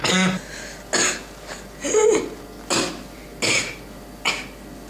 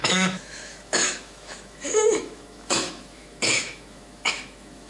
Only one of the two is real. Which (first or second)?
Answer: first